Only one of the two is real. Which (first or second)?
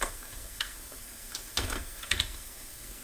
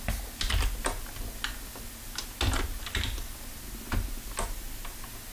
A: second